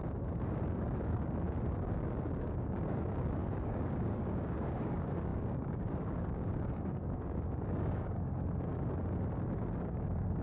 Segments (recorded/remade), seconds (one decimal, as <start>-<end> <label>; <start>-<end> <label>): 0.0-8.7 remade; 8.7-9.8 recorded; 9.8-10.4 remade